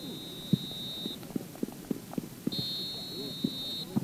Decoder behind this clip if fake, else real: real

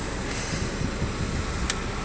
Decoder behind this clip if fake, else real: real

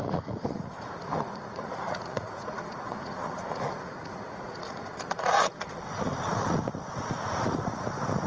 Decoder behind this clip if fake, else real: fake, vocoder, Vocos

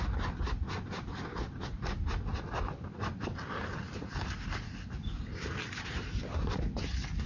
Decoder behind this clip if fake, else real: real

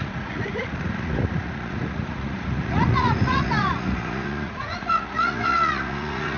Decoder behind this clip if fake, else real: fake, vocoder, Vocos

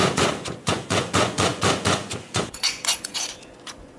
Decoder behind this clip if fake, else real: fake, vocoder, Vocos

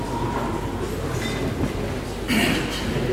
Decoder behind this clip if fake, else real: real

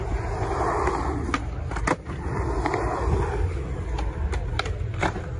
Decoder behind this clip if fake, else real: real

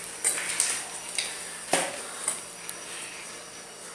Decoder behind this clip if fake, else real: real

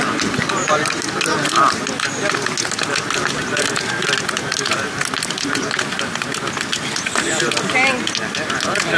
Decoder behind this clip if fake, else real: real